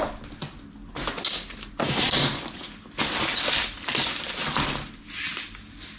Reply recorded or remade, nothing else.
recorded